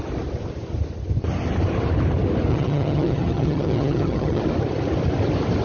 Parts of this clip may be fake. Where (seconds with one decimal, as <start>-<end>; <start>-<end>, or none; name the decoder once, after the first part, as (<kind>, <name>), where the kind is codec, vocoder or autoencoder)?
2.5-4.4 (vocoder, HiFi-GAN)